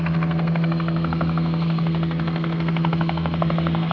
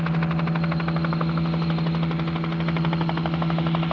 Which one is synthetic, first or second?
first